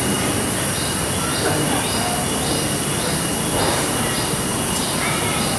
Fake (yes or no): no